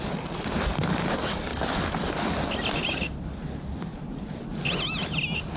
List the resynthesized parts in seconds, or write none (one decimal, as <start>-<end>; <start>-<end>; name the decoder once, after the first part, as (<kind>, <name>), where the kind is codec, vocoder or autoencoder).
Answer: 3.9-4.4 (vocoder, BigVGAN v2)